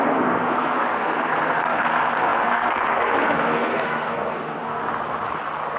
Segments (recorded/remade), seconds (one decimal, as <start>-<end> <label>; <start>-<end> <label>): 0.0-4.8 remade; 4.8-5.8 recorded